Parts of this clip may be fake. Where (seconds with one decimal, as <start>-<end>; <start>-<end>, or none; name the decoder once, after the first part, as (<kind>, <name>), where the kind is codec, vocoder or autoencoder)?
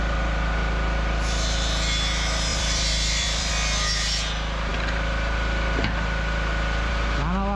2.5-3.5 (vocoder, BigVGAN v2)